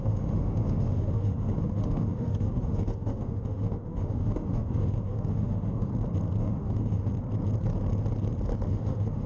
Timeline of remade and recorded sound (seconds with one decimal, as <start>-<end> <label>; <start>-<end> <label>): 0.0-5.9 remade; 5.9-6.4 recorded; 6.4-7.1 remade; 7.1-8.7 recorded; 8.7-9.3 remade